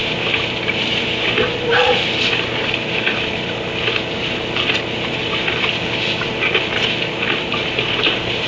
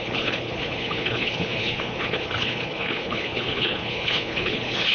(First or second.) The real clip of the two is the first